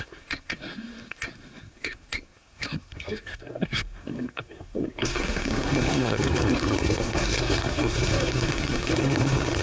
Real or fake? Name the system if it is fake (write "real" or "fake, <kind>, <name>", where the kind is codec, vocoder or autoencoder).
fake, codec, SNAC